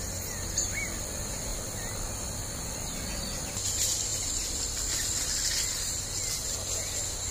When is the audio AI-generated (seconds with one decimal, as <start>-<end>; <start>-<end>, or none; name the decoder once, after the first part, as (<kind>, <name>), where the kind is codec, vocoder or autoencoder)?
4.1-4.7 (vocoder, BigVGAN v2)